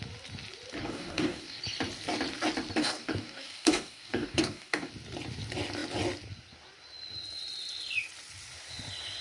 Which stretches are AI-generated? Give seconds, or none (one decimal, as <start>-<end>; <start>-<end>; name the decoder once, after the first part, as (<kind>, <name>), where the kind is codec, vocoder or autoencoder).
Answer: 0.8-1.6 (codec, DAC); 2.8-4.9